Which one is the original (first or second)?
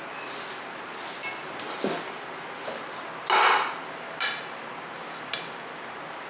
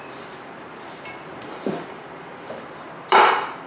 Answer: first